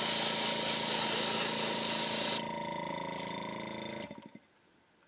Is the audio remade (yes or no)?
no